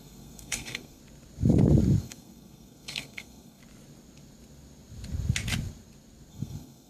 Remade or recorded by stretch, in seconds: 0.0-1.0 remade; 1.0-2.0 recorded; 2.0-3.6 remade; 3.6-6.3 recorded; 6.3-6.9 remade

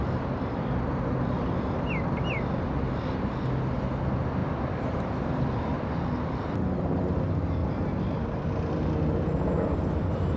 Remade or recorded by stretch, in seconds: 0.0-4.4 recorded; 4.4-6.5 remade; 6.5-10.4 recorded